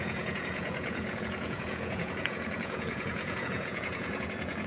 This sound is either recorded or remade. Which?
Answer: remade